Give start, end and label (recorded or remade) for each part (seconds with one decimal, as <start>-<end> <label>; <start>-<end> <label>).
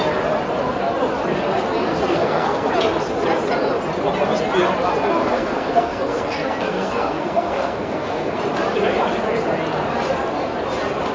0.0-1.9 recorded; 1.9-2.7 remade; 2.7-5.2 recorded; 5.2-8.4 remade; 8.4-11.1 recorded